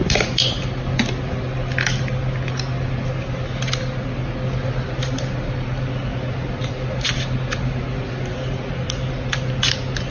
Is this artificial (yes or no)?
no